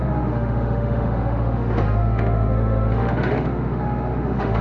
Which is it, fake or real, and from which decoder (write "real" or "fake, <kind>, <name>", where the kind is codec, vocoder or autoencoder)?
fake, autoencoder, DAC-VAE